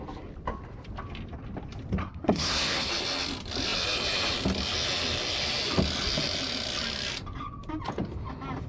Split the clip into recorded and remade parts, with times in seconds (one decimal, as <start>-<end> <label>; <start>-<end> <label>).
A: 0.0-2.0 recorded; 2.0-2.9 remade; 2.9-8.7 recorded